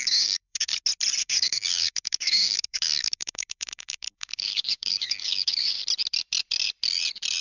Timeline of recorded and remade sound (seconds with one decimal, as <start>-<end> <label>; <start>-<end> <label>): 0.0-0.7 remade; 0.7-1.2 recorded; 1.2-5.8 remade; 5.8-7.4 recorded